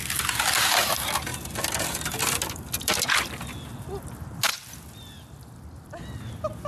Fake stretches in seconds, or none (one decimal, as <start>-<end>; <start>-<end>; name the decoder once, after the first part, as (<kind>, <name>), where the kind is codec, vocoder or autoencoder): none